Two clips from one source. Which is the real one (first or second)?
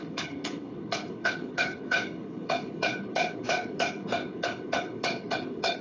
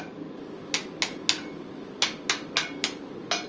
second